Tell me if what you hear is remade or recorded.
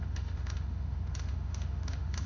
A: remade